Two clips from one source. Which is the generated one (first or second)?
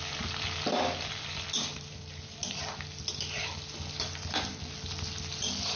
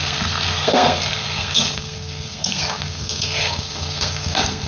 second